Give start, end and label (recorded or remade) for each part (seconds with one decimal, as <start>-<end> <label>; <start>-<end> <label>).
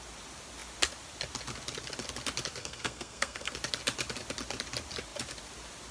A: 0.0-2.6 recorded; 2.6-3.5 remade; 3.5-5.9 recorded